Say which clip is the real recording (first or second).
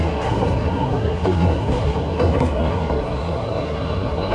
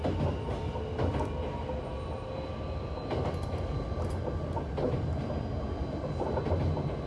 second